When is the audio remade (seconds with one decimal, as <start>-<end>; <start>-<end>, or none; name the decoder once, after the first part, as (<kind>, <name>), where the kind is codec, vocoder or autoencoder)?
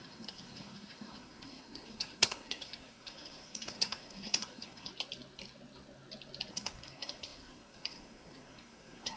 0.0-4.9 (codec, SNAC); 6.5-9.2